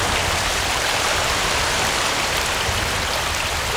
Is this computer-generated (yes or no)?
yes